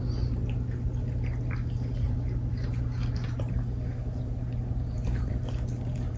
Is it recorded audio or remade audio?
recorded